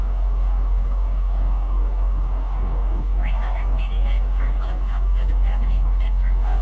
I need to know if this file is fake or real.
fake